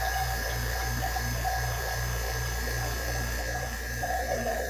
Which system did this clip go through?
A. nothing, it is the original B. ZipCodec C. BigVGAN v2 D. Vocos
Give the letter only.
C